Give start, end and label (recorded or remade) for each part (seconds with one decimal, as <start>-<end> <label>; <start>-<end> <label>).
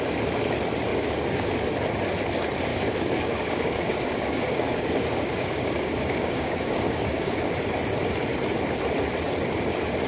0.0-0.9 recorded; 0.9-1.5 remade; 1.5-2.7 recorded; 2.7-7.3 remade; 7.3-10.1 recorded